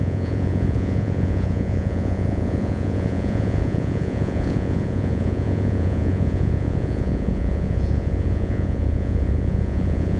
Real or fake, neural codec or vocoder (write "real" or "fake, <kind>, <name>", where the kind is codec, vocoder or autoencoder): fake, vocoder, Vocos